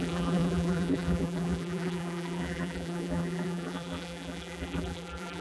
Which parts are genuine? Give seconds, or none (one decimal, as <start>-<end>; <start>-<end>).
none